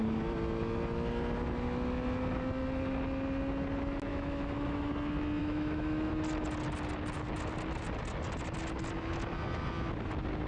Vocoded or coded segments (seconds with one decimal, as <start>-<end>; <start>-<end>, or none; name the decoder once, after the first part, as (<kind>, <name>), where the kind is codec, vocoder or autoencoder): 4.1-4.9 (autoencoder, DAC-VAE); 5.4-6.1